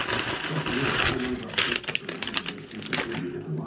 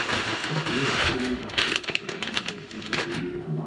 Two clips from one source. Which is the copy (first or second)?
second